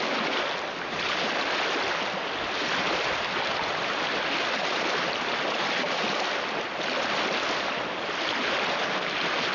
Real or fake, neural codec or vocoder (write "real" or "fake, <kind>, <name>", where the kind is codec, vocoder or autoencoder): real